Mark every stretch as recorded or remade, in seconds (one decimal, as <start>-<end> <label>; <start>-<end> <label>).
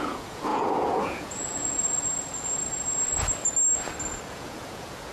0.0-2.1 remade; 2.1-4.3 recorded; 4.3-5.1 remade